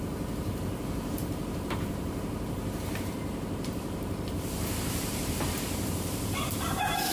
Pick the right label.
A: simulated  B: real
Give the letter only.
A